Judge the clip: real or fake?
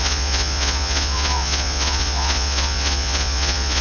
fake